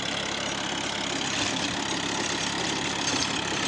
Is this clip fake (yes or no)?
no